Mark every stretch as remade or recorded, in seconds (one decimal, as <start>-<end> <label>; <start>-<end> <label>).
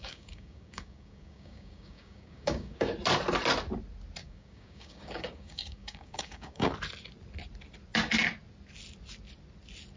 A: 0.0-2.9 remade; 2.9-4.2 recorded; 4.2-6.7 remade; 6.7-10.0 recorded